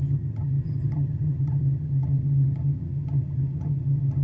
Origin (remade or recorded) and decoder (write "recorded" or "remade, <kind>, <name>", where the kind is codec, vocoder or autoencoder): remade, vocoder, HiFi-GAN